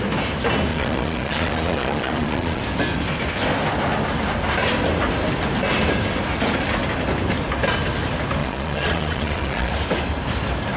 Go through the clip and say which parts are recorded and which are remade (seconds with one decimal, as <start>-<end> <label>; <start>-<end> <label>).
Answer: 0.0-0.7 recorded; 0.7-2.6 remade; 2.6-8.4 recorded; 8.4-9.7 remade; 9.7-10.8 recorded